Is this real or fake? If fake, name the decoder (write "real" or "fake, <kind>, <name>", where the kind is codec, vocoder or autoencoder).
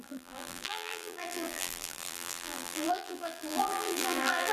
fake, vocoder, BigVGAN v2